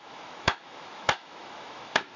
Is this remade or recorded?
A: remade